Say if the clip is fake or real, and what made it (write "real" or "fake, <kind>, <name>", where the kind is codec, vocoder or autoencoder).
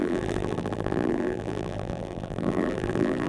fake, vocoder, BigVGAN v2